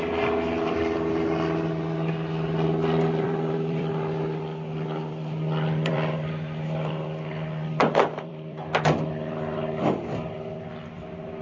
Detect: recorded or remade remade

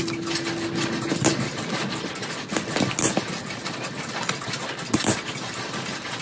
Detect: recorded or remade recorded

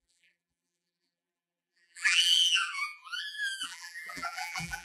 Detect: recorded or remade remade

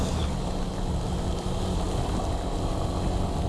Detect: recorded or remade recorded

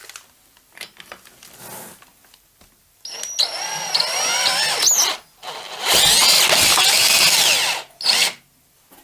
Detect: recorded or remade recorded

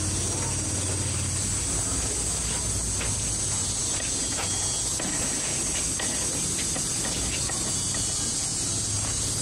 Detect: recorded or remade recorded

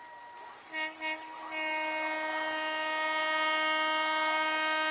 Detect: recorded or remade recorded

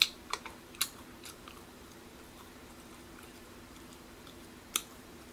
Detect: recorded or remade remade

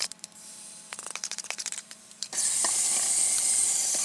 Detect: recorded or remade remade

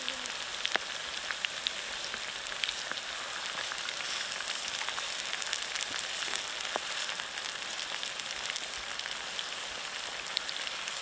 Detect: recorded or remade recorded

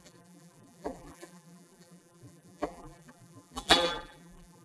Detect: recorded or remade remade